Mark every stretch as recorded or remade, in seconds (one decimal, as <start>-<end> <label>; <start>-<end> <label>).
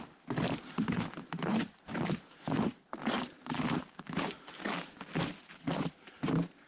0.0-6.7 remade